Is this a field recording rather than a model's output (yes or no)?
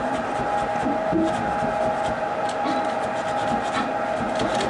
yes